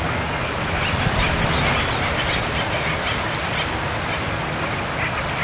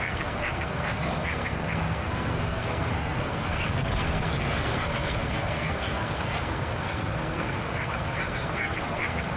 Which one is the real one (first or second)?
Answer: first